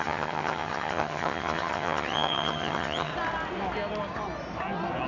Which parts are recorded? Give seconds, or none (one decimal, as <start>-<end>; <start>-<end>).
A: 3.1-5.1